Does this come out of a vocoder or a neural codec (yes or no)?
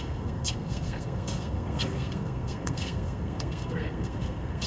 yes